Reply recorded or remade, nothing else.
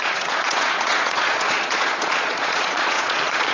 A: remade